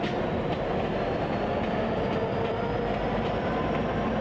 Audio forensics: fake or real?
fake